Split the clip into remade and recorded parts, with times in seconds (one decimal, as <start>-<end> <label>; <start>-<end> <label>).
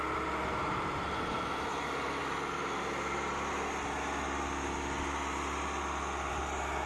0.0-6.9 recorded